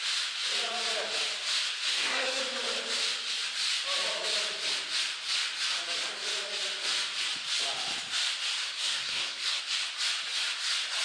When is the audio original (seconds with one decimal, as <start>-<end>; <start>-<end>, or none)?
0.0-1.9; 2.4-8.6; 9.6-11.0